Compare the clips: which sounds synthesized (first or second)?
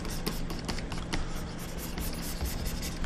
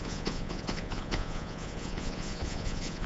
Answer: second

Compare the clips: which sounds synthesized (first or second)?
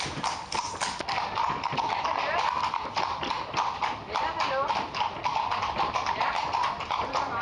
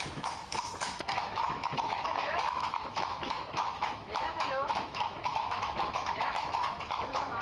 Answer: second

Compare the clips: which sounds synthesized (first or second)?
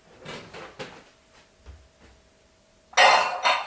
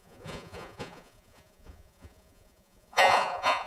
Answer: second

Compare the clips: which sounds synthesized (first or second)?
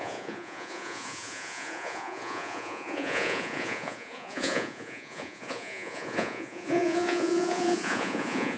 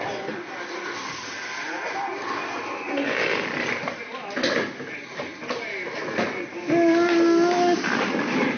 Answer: first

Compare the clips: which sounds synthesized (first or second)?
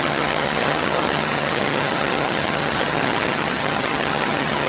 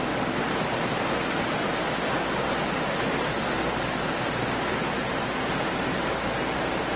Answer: first